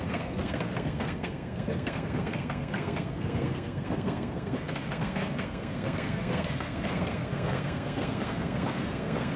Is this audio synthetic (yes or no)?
yes